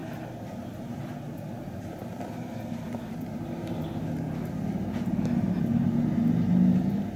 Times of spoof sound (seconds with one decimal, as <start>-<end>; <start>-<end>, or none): 0.0-3.7